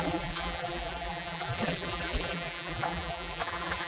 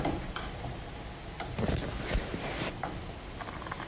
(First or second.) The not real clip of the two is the first